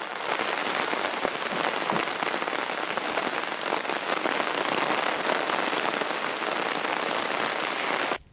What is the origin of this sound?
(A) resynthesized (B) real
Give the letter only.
B